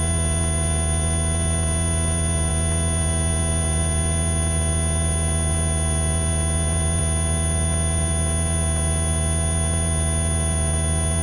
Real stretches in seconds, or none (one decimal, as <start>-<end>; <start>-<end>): 0.0-11.2